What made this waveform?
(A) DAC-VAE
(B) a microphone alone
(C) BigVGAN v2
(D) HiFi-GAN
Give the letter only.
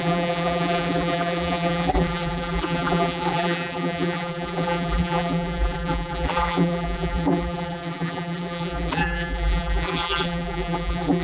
C